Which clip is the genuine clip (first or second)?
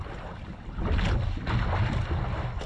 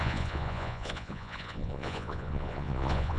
first